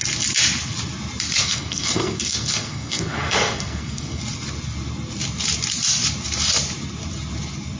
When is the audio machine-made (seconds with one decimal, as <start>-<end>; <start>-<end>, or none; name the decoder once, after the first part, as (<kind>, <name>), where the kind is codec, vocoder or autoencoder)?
1.4-4.2 (codec, SNAC)